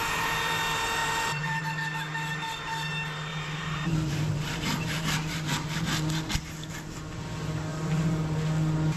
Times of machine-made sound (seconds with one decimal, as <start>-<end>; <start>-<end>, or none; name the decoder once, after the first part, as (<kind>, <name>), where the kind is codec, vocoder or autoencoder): 1.0-1.6 (vocoder, BigVGAN v2); 3.3-6.3; 7.7-8.2